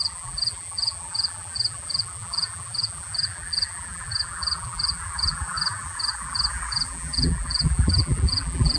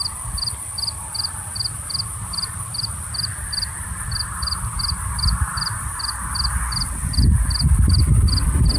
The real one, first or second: second